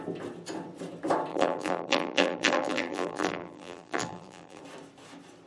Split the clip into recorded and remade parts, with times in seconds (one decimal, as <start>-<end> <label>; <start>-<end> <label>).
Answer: 0.0-1.3 recorded; 1.3-4.6 remade; 4.6-5.5 recorded